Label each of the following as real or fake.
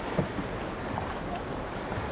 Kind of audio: real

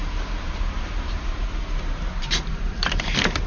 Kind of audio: fake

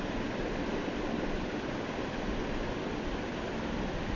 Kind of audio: real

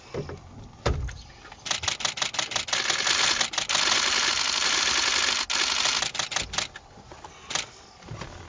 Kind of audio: real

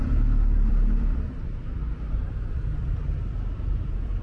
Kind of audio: fake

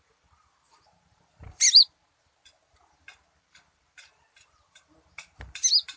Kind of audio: fake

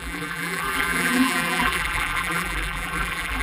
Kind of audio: fake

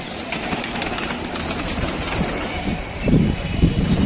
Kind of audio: fake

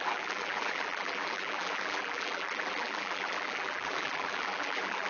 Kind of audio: fake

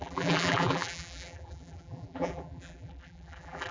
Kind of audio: fake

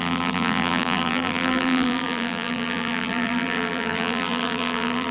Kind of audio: fake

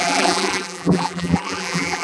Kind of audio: fake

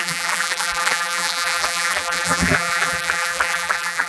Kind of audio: fake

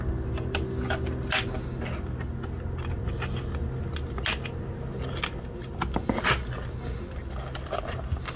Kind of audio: real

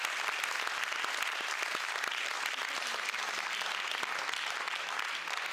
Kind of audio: real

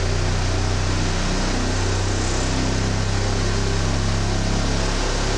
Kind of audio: real